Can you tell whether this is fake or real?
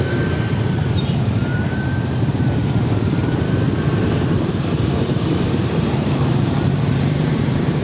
fake